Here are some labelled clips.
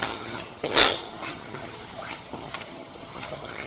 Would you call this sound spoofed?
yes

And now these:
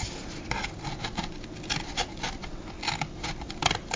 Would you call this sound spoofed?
no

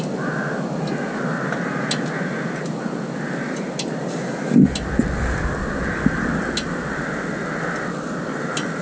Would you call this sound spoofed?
no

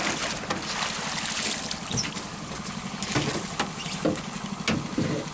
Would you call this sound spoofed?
no